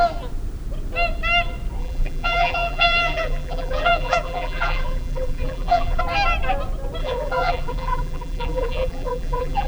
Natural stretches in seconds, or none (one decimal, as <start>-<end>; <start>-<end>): 0.0-1.8; 6.0-7.0